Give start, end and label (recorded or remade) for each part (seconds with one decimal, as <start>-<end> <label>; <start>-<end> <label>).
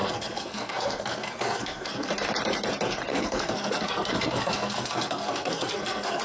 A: 0.0-2.1 remade; 2.1-3.1 recorded; 3.1-6.2 remade